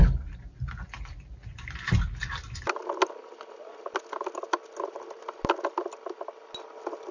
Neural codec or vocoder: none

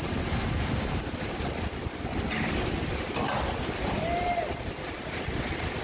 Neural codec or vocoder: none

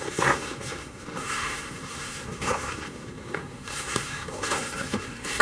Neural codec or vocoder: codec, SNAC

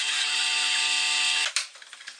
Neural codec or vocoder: none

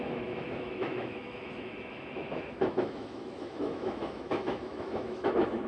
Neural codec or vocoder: autoencoder, DAC-VAE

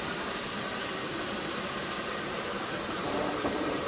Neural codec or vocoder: vocoder, BigVGAN v2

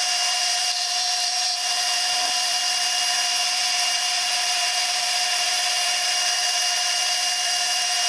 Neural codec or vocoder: vocoder, BigVGAN v2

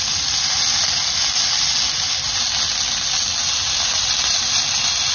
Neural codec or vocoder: none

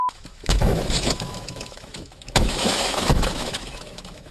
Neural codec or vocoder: autoencoder, DAC-VAE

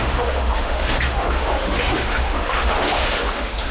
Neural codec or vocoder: autoencoder, DAC-VAE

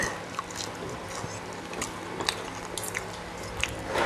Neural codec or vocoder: none